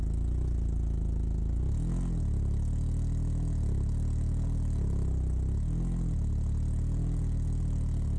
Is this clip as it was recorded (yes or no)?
yes